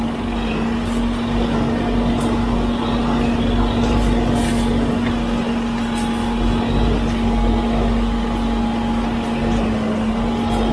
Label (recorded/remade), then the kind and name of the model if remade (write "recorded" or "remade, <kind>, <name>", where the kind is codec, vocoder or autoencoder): recorded